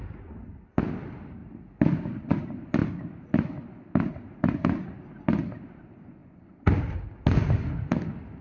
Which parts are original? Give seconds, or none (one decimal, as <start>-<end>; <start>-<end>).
0.0-6.2; 6.8-8.4